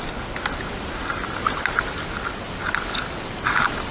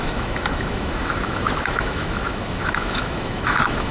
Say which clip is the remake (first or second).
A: second